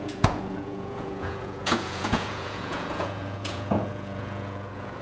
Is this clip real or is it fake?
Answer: fake